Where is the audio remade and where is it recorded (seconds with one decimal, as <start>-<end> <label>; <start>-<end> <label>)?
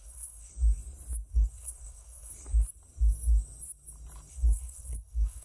0.0-0.5 remade; 0.5-1.3 recorded; 1.3-2.3 remade; 2.3-4.3 recorded; 4.3-5.4 remade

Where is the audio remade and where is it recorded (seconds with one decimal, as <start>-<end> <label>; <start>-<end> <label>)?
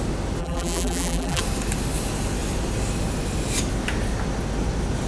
0.0-0.4 recorded; 0.4-1.4 remade; 1.4-5.1 recorded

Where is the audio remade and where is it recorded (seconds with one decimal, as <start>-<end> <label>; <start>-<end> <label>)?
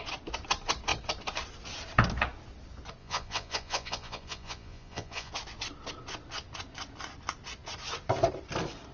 0.0-3.0 recorded; 3.0-5.3 remade; 5.3-8.9 recorded